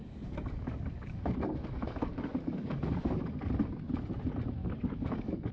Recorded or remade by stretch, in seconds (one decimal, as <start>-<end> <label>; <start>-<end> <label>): 0.0-3.3 remade; 3.3-4.6 recorded; 4.6-5.5 remade